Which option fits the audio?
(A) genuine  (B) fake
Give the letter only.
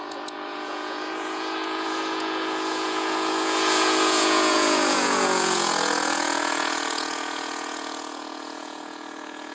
B